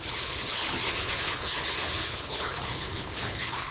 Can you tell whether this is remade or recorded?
remade